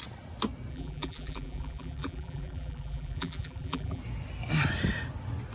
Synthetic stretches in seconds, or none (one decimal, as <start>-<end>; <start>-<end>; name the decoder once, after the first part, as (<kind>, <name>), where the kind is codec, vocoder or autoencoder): 0.7-4.0 (vocoder, BigVGAN v2)